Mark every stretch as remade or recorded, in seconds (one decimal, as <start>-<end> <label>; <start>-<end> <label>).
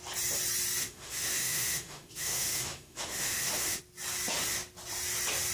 0.0-0.8 recorded; 0.8-3.8 remade; 3.8-5.5 recorded